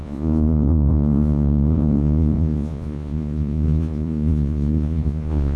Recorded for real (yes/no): no